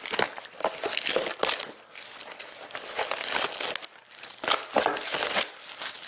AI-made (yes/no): no